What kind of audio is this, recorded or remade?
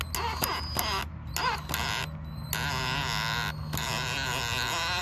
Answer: recorded